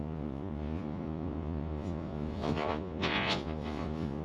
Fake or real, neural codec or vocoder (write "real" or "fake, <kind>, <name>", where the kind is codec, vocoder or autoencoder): fake, vocoder, Vocos